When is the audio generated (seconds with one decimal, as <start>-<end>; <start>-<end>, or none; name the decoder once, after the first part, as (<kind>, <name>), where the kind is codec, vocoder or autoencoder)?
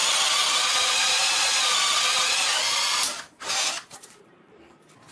none